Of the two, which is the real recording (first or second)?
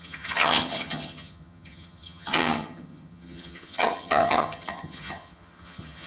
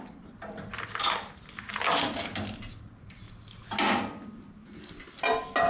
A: second